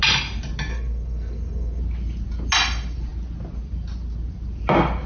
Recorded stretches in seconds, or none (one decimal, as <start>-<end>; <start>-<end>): 0.0-0.7; 1.8-5.1